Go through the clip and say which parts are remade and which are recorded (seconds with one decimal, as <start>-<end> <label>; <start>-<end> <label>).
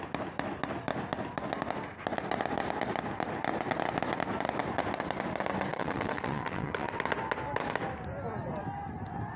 0.0-5.7 recorded; 5.7-6.9 remade; 6.9-9.4 recorded